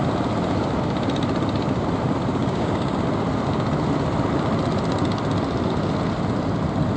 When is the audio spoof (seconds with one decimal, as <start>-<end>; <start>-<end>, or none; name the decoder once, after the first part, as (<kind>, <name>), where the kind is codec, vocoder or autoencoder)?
2.4-3.0 (codec, DAC)